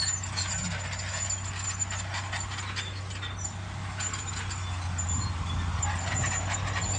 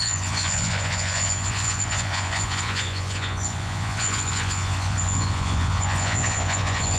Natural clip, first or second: first